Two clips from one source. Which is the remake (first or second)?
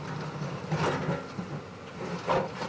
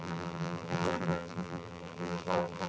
second